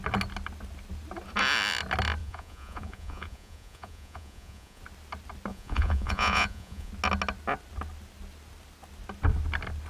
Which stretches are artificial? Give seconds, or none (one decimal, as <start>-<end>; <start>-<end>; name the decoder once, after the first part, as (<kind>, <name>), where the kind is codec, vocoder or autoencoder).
2.2-4.8 (vocoder, Vocos); 5.5-6.9